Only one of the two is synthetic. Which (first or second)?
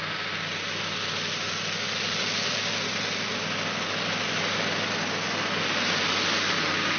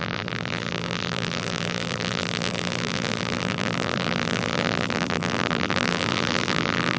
second